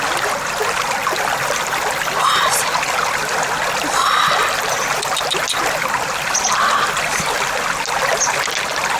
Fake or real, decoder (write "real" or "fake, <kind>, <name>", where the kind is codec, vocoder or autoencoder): real